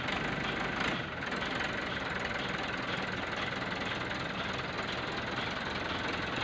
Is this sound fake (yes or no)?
no